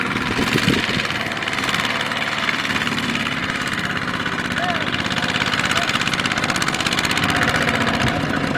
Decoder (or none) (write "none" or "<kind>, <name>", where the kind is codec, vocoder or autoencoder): none